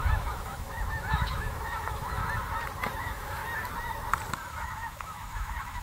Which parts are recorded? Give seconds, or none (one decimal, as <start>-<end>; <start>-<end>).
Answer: 2.2-3.0; 3.4-4.5

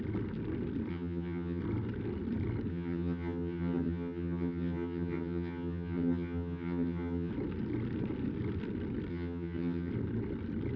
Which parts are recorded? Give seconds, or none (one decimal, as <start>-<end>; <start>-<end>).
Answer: 0.0-0.9; 1.6-2.7; 7.3-9.1; 9.9-10.8